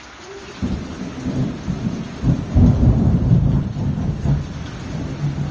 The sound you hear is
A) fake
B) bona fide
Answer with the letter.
A